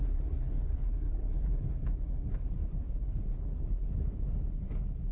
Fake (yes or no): yes